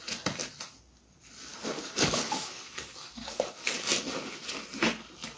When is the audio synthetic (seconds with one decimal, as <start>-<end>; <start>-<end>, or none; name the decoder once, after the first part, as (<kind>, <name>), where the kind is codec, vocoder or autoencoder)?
1.5-4.0 (codec, DAC)